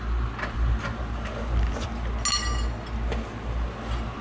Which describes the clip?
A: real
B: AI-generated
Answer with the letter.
A